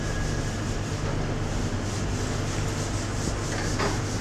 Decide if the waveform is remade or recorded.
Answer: recorded